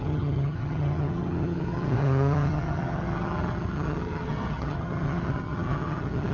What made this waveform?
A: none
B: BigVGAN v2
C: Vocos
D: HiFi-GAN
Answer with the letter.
D